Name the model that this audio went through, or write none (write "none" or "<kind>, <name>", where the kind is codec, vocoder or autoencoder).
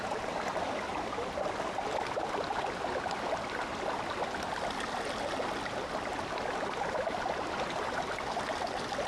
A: none